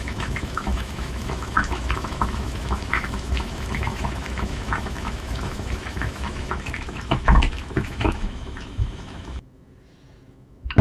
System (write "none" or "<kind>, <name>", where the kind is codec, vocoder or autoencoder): autoencoder, DAC-VAE